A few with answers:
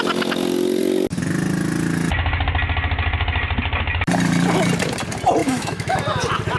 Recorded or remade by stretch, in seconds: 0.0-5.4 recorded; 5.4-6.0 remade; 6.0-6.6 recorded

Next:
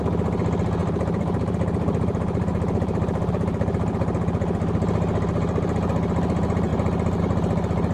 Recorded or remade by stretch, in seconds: 0.0-0.8 recorded; 0.8-3.3 remade; 3.3-7.9 recorded

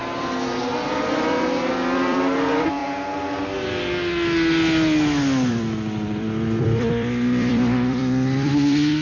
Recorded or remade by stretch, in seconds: 0.0-1.7 recorded; 1.7-2.8 remade; 2.8-5.5 recorded; 5.5-9.0 remade